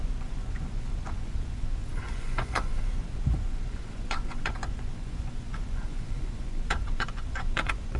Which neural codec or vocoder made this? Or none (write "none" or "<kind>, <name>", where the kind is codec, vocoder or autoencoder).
vocoder, Vocos